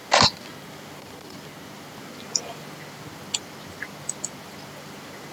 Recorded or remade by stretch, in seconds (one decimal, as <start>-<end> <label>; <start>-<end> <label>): 0.0-5.3 recorded